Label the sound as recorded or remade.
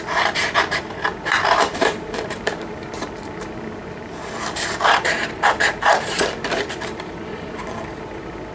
remade